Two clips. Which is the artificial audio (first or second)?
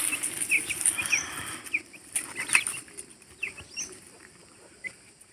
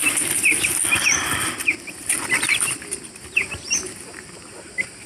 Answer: first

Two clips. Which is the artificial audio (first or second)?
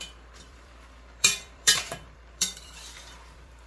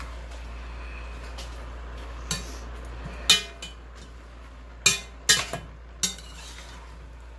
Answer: first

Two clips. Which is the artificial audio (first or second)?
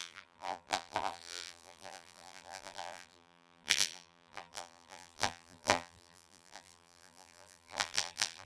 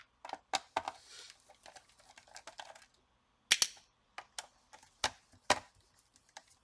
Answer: first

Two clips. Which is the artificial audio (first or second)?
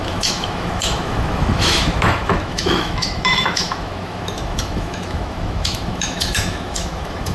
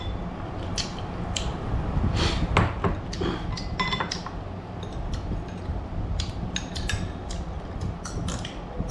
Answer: first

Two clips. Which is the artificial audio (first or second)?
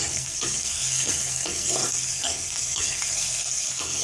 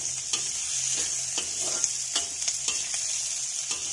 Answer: first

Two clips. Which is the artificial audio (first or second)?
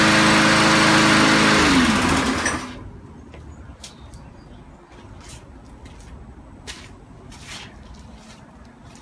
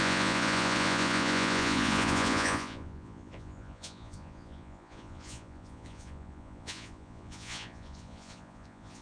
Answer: second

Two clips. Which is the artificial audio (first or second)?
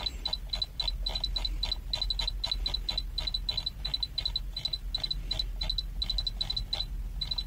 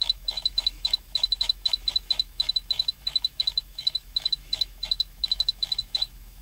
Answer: second